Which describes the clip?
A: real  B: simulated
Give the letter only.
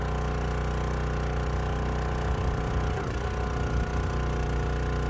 A